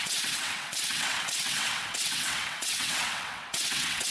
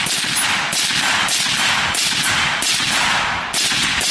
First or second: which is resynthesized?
first